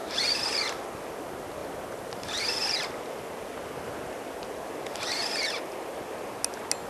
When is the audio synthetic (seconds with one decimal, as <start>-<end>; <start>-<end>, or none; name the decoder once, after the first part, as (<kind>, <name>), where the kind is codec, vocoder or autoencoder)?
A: 0.0-0.7 (vocoder, BigVGAN v2)